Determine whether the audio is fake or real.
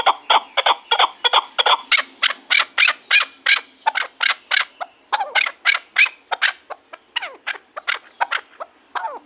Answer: real